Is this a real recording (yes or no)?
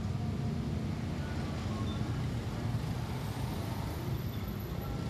yes